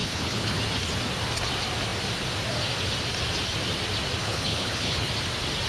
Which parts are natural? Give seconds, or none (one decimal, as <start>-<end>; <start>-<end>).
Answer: 0.6-4.2; 5.1-5.7